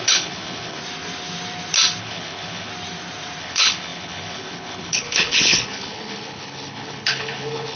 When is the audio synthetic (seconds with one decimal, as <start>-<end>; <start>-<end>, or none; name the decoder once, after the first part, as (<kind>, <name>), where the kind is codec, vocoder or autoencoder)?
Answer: 0.0-0.8 (codec, HILCodec); 2.0-2.7; 3.4-7.8